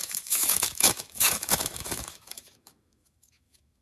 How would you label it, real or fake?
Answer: fake